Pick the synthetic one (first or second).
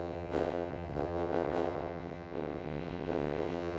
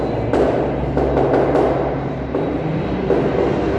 first